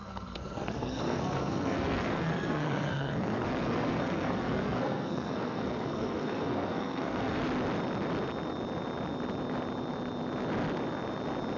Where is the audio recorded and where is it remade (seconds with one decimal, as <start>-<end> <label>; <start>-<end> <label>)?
0.0-7.4 remade; 7.4-11.6 recorded